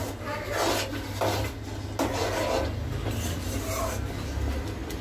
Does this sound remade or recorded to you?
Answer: recorded